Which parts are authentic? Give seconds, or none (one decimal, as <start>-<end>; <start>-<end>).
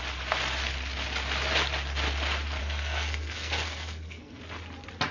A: 0.0-2.6; 4.4-5.1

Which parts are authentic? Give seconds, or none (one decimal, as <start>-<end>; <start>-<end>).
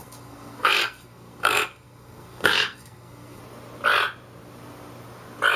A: 3.4-5.6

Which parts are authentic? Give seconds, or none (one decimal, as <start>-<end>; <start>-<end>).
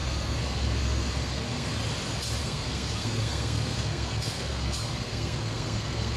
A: 1.7-2.4